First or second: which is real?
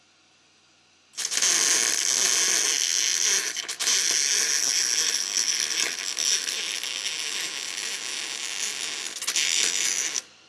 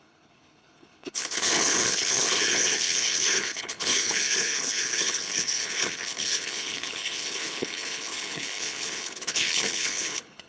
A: first